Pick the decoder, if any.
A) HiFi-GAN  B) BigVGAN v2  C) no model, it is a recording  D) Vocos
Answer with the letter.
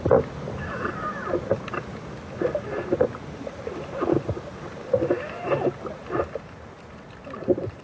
C